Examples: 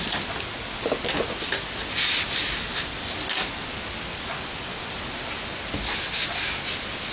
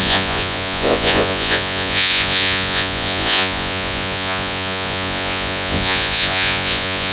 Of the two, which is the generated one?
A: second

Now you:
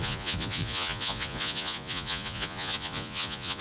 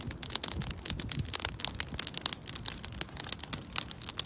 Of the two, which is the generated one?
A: first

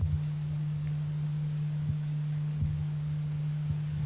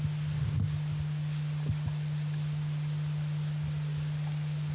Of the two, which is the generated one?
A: first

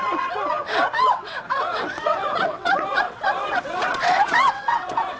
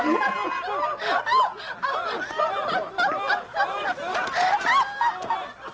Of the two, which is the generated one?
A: first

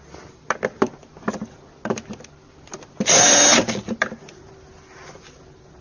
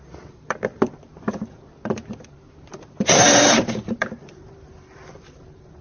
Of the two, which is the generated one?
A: second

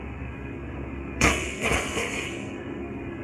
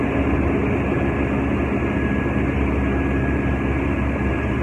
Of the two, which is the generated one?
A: first